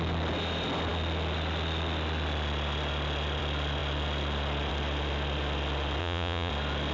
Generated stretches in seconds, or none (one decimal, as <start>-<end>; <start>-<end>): 6.0-6.5